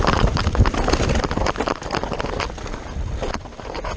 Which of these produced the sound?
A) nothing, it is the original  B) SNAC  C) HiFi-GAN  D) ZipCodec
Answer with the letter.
A